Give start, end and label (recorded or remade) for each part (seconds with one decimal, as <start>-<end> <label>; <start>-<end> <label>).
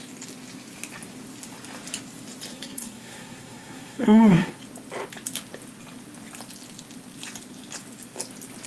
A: 0.0-2.5 recorded; 2.5-4.6 remade; 4.6-8.7 recorded